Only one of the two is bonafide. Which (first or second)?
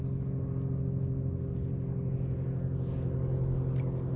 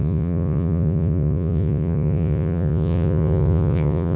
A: first